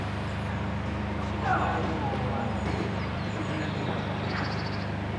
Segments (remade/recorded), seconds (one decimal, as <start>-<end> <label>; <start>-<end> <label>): 0.0-1.5 recorded; 1.5-3.9 remade; 3.9-5.2 recorded